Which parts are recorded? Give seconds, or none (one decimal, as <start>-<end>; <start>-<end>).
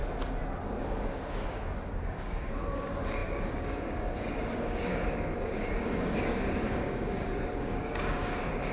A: 0.0-0.6